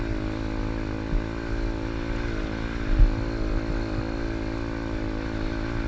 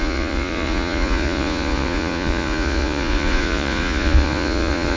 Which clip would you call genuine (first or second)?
first